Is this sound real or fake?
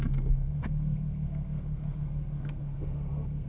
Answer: fake